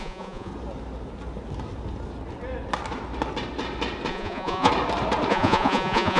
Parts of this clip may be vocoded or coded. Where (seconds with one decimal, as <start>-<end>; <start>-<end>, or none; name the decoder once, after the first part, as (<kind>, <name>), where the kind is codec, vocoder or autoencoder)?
0.0-0.5 (vocoder, Vocos); 4.1-4.7; 5.3-6.2